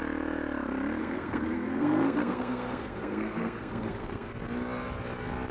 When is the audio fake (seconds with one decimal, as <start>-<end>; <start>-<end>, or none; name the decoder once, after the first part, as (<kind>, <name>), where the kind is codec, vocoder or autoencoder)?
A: 1.0-4.3 (codec, SNAC)